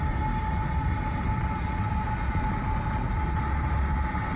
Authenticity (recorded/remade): recorded